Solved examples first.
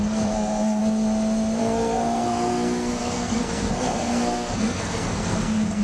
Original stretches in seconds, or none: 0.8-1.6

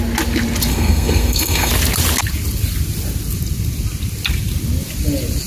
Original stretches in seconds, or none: 0.0-0.7; 1.7-5.5

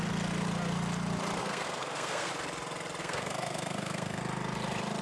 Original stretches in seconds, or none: 0.0-1.4; 2.3-3.0; 4.2-5.0

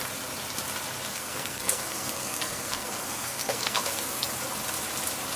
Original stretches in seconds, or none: 0.0-1.1; 4.3-5.4